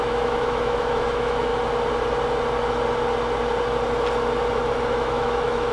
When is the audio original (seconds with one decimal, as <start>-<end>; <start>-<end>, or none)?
1.5-4.9